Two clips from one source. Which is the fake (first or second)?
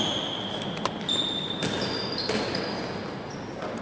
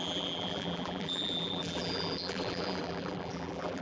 second